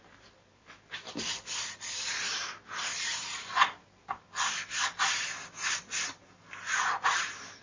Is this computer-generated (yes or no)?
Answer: yes